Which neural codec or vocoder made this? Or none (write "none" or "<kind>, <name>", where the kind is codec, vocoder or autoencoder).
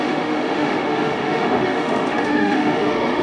autoencoder, DAC-VAE